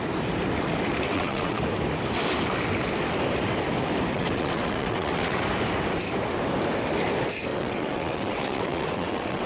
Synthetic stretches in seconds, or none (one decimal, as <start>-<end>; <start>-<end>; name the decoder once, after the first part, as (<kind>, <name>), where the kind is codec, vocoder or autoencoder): 1.1-1.6 (vocoder, WaveNeXt); 4.1-5.4; 7.5-9.5